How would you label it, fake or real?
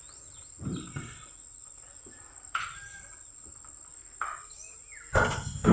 real